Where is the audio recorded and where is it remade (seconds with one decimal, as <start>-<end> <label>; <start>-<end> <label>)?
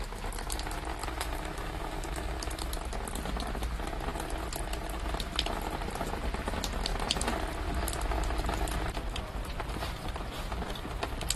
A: 0.0-1.0 recorded; 1.0-2.7 remade; 2.7-11.3 recorded